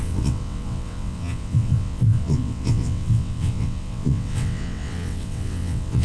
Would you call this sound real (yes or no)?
no